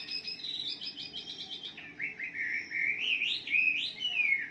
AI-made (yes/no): no